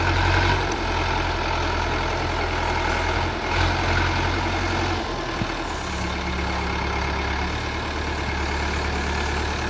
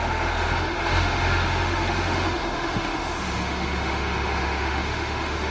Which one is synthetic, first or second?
second